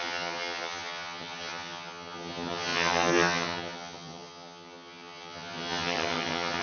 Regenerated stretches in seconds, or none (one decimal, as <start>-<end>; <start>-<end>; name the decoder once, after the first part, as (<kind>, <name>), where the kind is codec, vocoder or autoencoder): 0.0-6.6 (vocoder, HiFi-GAN)